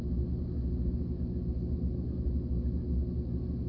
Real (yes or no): yes